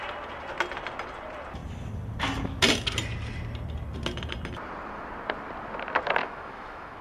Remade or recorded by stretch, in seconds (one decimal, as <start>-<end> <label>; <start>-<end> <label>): 0.0-6.2 recorded; 6.2-7.0 remade

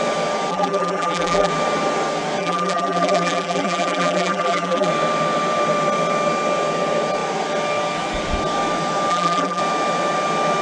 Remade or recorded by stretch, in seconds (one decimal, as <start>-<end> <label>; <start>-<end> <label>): 0.0-0.5 recorded; 0.5-1.5 remade; 1.5-2.4 recorded; 2.4-4.9 remade; 4.9-9.1 recorded; 9.1-9.6 remade; 9.6-10.6 recorded

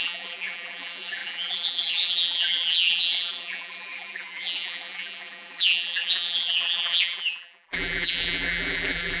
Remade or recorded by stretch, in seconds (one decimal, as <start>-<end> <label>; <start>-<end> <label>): 0.0-9.2 remade

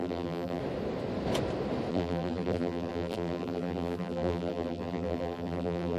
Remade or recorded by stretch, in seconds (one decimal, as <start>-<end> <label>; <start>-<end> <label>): 0.0-0.6 remade; 0.6-1.9 recorded; 1.9-6.0 remade

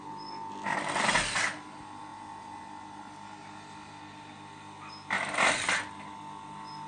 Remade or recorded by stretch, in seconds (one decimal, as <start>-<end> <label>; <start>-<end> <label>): 0.0-6.9 recorded

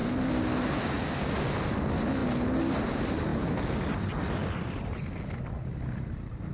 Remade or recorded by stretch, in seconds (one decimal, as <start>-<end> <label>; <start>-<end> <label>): 0.0-6.5 recorded